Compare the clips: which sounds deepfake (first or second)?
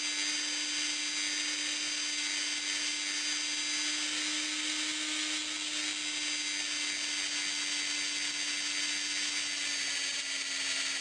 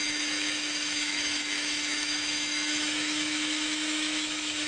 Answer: second